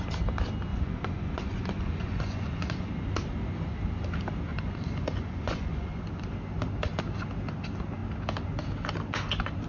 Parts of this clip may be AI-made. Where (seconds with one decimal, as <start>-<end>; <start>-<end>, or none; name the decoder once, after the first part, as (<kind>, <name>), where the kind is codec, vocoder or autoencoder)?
0.7-2.9 (vocoder, Vocos); 4.5-6.0